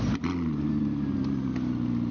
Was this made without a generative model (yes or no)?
yes